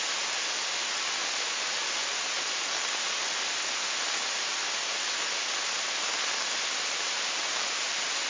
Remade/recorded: recorded